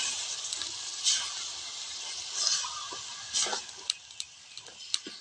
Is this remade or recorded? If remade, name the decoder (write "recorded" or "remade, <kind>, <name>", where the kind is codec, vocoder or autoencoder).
recorded